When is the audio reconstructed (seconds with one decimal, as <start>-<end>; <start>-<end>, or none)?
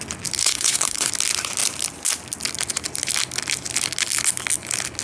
0.4-1.1